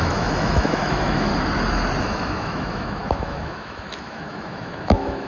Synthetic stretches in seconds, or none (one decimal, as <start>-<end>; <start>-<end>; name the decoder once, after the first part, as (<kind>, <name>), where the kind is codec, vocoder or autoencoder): 0.0-1.3 (autoencoder, DAC-VAE); 2.0-5.3